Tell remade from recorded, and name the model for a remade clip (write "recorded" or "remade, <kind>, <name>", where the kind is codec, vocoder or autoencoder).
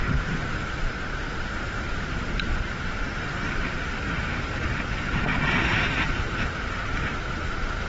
remade, vocoder, BigVGAN v2